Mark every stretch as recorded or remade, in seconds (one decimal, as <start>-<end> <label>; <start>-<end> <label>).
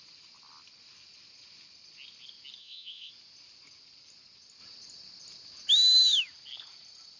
0.0-2.6 recorded; 2.6-3.1 remade; 3.1-7.2 recorded